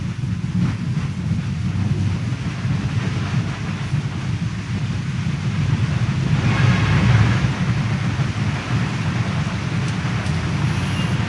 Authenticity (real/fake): real